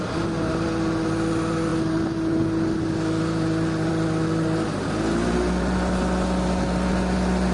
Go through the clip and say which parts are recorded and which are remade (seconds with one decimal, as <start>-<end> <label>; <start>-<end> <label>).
0.0-7.5 recorded